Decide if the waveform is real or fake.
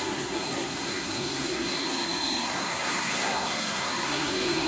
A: fake